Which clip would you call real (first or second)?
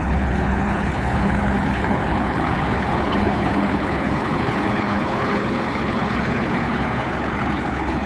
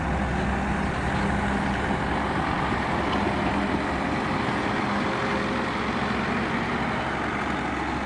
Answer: second